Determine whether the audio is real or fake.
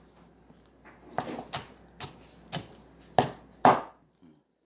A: real